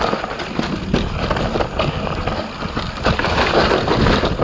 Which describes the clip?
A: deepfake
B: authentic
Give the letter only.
B